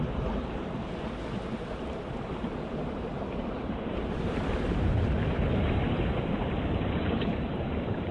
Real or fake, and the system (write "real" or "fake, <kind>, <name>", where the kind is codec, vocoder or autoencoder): fake, vocoder, BigVGAN v2